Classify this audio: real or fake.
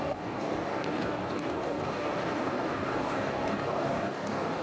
fake